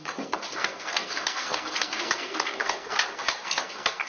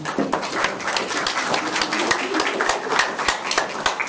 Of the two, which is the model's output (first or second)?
first